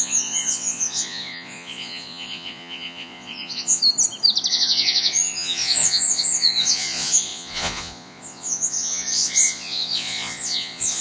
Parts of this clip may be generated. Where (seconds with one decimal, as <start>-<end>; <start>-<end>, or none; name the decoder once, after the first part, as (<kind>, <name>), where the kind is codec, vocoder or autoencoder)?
0.0-3.8 (vocoder, Vocos); 4.5-11.0